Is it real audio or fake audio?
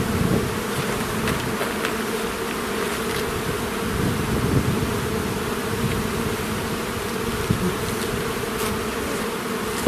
real